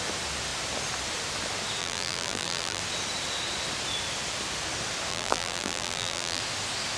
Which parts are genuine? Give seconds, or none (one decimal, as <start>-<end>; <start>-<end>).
0.0-1.8; 2.8-5.1; 6.4-7.0